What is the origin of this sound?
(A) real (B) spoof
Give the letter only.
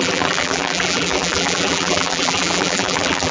B